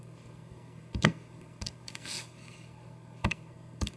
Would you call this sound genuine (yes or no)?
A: no